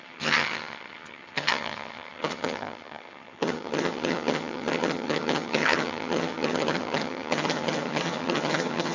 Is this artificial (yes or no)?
yes